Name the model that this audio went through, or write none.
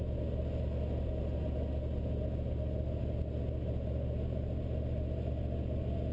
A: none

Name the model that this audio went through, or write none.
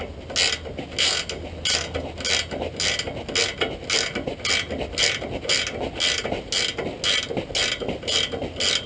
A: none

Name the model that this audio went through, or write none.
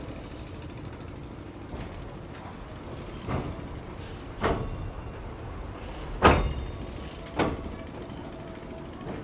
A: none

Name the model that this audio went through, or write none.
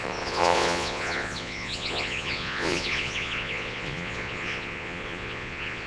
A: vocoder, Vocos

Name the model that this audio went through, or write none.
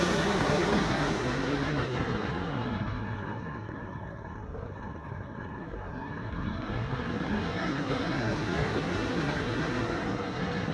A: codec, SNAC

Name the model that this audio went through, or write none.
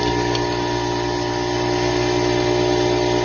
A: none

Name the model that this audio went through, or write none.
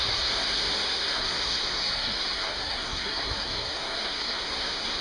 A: codec, SNAC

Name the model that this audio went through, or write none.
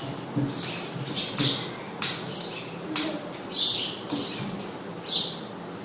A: none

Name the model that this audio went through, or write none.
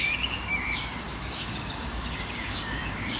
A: codec, DAC